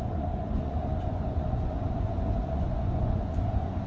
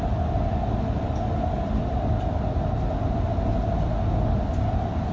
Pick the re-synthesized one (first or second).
first